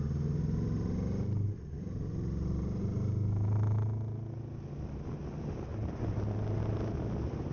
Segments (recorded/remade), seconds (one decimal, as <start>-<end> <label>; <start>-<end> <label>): 0.0-7.5 recorded